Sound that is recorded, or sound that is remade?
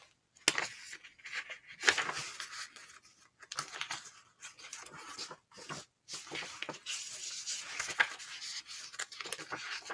recorded